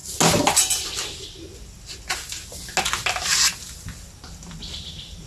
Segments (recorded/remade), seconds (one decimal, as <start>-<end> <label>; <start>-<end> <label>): 0.0-5.3 recorded